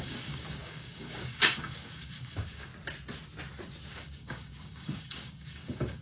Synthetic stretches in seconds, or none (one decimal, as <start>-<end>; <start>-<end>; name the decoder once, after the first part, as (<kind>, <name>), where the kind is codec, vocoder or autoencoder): 0.0-2.7 (codec, DAC); 3.9-6.0